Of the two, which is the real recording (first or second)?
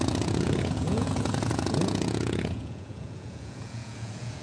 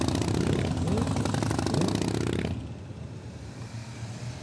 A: second